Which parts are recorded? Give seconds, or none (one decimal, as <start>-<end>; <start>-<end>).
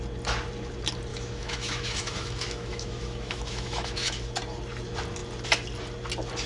0.0-1.1; 4.2-6.5